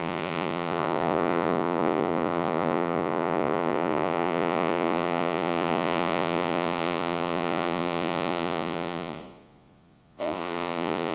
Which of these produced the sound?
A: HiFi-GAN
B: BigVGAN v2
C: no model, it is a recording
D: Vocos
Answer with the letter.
D